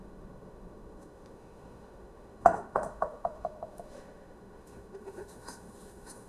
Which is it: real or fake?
fake